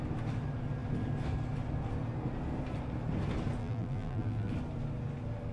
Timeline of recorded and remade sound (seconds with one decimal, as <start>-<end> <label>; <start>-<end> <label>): 0.0-3.6 recorded; 3.6-4.5 remade; 4.5-5.5 recorded